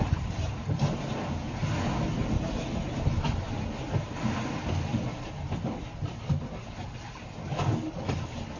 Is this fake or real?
real